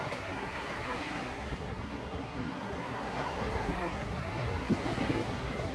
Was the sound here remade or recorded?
remade